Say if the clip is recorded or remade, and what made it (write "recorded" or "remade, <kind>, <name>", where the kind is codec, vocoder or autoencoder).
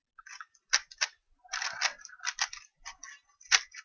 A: recorded